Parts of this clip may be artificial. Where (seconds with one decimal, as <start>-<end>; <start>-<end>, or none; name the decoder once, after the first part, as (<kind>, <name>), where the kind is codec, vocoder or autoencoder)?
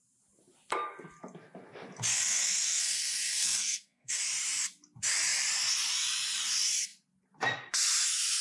2.1-4.2 (codec, SNAC)